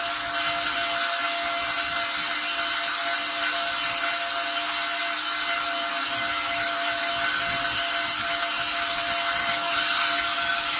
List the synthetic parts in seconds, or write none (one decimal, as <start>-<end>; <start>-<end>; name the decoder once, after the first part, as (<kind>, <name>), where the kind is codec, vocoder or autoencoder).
6.3-7.1 (codec, DAC); 9.4-10.8